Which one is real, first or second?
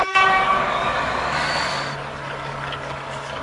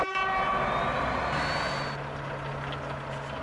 second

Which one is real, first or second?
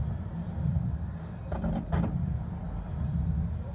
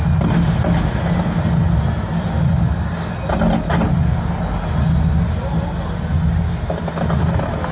second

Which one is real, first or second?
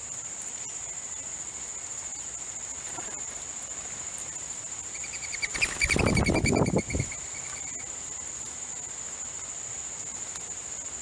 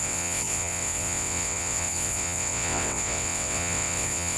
first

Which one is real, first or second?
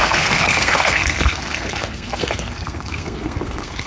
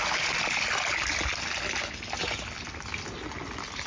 second